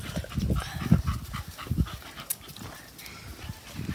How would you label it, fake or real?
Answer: real